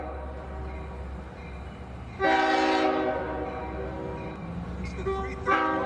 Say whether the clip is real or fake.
real